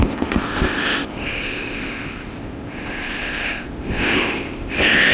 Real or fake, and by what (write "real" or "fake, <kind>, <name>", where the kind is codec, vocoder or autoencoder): fake, codec, ZipCodec